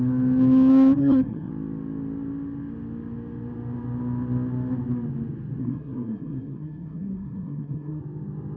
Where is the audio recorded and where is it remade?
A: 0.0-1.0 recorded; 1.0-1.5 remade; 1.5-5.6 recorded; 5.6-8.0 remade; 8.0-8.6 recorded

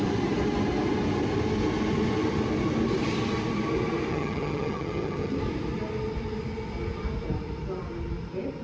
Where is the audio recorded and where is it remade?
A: 0.0-4.1 recorded; 4.1-5.4 remade; 5.4-8.6 recorded